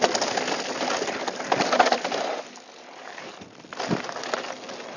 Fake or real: real